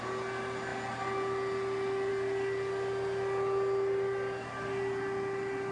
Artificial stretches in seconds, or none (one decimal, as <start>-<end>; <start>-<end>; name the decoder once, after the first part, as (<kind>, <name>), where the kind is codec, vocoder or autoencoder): none